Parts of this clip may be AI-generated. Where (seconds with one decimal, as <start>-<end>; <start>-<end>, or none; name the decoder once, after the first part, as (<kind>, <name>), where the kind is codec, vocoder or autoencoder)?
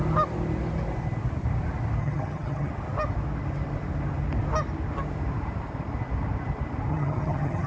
2.0-2.7 (vocoder, HiFi-GAN); 6.9-7.7